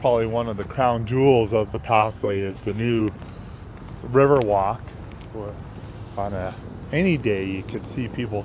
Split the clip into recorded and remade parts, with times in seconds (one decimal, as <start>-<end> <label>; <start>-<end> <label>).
0.0-1.7 recorded; 1.7-3.0 remade; 3.0-8.4 recorded